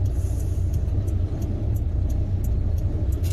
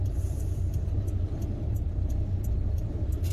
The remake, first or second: second